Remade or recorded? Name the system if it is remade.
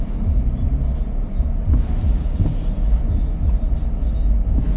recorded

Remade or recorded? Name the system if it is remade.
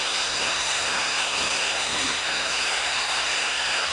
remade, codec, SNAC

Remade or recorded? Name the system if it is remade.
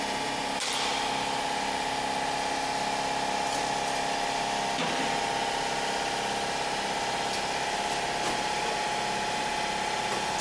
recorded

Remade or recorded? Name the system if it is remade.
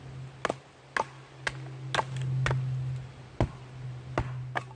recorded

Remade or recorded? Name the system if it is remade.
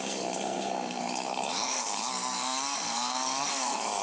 remade, codec, SNAC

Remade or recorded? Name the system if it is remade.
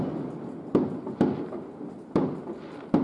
recorded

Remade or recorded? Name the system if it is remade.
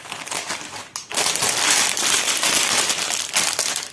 recorded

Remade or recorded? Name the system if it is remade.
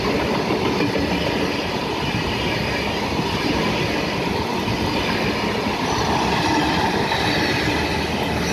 recorded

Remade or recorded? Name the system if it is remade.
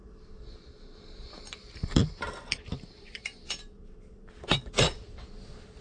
remade, vocoder, BigVGAN v2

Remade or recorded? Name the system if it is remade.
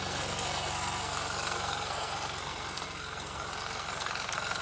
remade, codec, SNAC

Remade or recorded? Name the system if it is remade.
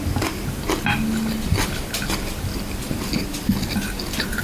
recorded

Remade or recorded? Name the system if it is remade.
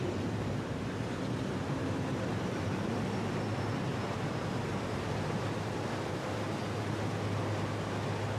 recorded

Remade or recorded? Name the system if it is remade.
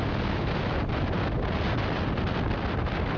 recorded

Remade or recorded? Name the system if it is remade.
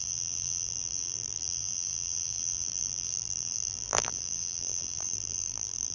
remade, vocoder, BigVGAN v2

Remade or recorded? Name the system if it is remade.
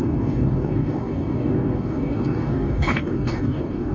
remade, codec, DAC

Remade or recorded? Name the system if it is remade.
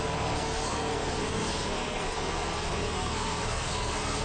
remade, codec, SNAC